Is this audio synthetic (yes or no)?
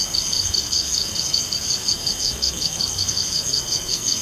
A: yes